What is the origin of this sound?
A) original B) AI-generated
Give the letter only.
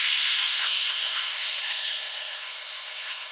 B